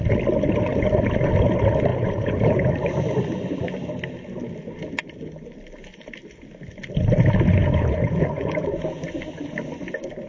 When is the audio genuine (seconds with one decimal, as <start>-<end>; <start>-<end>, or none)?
0.0-1.9; 2.7-7.6; 9.0-10.3